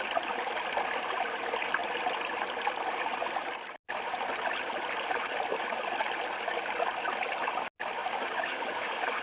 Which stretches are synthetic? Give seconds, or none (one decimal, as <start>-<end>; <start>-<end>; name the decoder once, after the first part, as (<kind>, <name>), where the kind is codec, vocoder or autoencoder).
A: 8.0-9.2 (codec, DAC)